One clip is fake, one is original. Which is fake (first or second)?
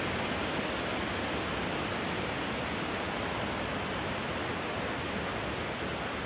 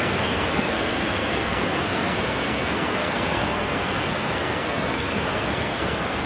second